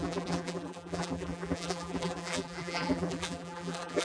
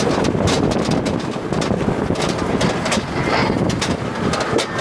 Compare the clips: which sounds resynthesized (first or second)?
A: first